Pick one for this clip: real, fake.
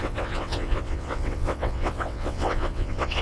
fake